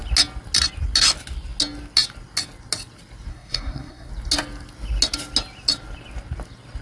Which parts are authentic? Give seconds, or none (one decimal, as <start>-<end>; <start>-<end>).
0.0-3.3; 4.1-6.8

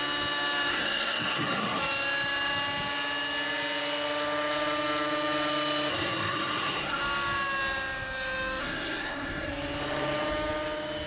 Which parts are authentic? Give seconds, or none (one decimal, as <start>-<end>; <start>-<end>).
0.0-0.7; 1.8-5.9; 7.0-8.6; 9.5-11.1

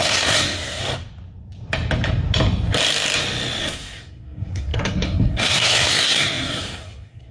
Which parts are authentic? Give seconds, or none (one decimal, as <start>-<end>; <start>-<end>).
0.8-3.6